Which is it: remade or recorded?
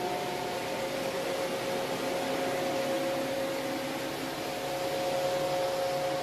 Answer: recorded